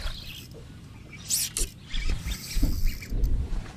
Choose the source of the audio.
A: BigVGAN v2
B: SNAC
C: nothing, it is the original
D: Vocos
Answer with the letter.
C